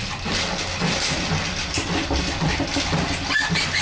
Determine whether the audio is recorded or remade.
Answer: recorded